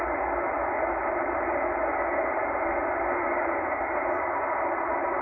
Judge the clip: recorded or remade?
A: recorded